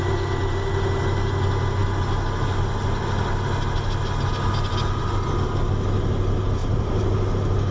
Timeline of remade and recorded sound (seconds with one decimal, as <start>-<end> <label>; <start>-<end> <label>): 0.0-6.6 recorded; 6.6-7.3 remade; 7.3-7.7 recorded